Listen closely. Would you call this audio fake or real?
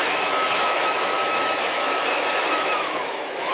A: fake